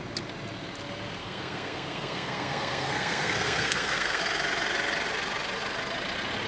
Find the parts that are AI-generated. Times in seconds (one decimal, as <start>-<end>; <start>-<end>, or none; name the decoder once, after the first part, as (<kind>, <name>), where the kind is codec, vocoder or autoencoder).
1.2-4.2 (codec, SNAC)